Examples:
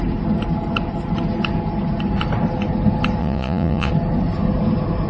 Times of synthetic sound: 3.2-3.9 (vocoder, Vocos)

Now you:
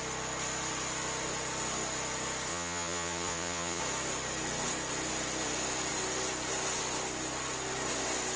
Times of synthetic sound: 2.5-3.8 (vocoder, Vocos)

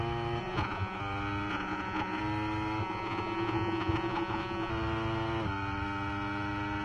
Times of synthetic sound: 0.4-1.0 (vocoder, Vocos); 1.5-2.2; 2.8-4.7

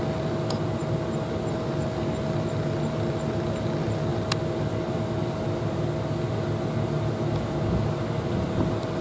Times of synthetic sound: none

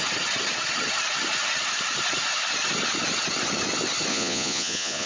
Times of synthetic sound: 4.1-5.1 (vocoder, Vocos)

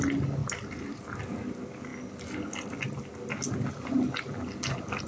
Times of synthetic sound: none

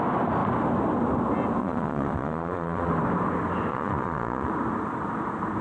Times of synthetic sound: 1.6-2.9 (vocoder, Vocos); 3.7-4.5

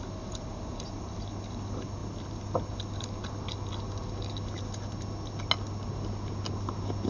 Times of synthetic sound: none